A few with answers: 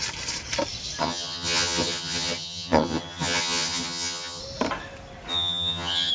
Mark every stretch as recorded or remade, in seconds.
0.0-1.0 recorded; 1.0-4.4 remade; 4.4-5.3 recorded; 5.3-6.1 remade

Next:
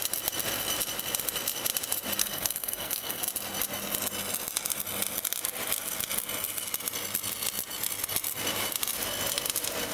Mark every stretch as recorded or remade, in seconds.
0.0-2.2 recorded; 2.2-3.2 remade; 3.2-9.9 recorded

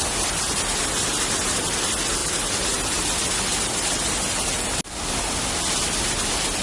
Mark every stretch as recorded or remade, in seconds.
0.0-6.6 recorded

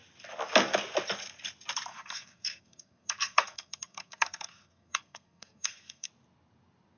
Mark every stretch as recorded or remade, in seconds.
0.0-1.9 recorded; 1.9-6.1 remade; 6.1-7.0 recorded